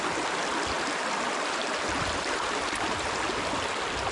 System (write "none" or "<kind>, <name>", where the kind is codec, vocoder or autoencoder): none